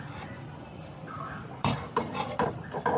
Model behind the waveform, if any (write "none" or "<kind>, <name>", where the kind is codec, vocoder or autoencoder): vocoder, BigVGAN v2